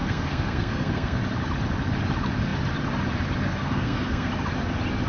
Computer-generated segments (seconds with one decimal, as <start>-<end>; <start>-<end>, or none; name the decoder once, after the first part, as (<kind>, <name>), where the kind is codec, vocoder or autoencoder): 0.0-1.2 (codec, SNAC); 3.5-4.3